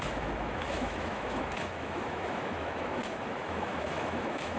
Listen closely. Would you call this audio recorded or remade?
remade